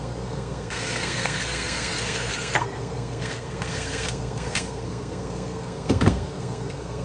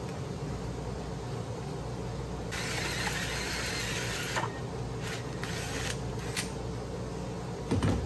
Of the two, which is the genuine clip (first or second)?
second